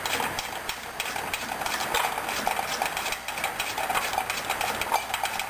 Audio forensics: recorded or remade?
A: recorded